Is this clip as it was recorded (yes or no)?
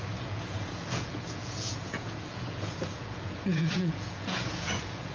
no